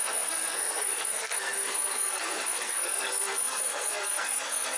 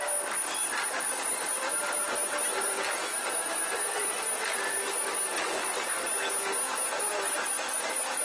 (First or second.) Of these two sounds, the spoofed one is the first